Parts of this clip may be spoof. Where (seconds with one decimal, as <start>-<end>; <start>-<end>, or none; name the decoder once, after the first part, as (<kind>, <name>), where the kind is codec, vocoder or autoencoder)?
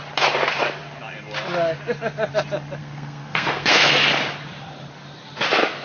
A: 2.8-4.0 (codec, SNAC)